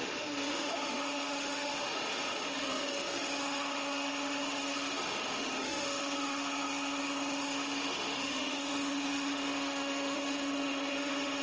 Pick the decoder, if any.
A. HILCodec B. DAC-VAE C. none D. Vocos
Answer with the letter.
B